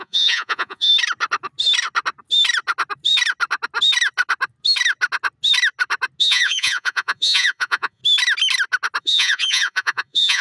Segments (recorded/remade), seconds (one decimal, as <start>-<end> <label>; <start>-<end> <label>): 0.0-0.9 remade; 0.9-6.2 recorded; 6.2-8.0 remade; 8.0-9.0 recorded; 9.0-10.4 remade